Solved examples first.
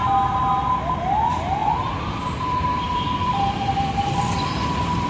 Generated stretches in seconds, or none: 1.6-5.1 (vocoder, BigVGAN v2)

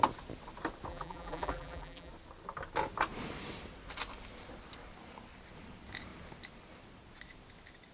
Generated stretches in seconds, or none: 0.9-2.1 (vocoder, BigVGAN v2)

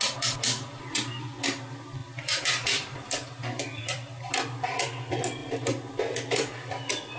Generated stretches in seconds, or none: 2.0-4.3 (vocoder, BigVGAN v2)

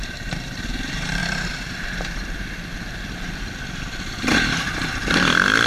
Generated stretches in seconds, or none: 0.0-1.2 (vocoder, BigVGAN v2); 3.5-5.7